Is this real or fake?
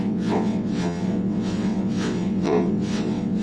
fake